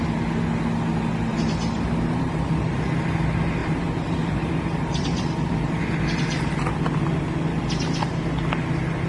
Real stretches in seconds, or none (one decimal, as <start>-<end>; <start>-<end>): 0.0-1.3; 3.2-3.6; 5.8-9.1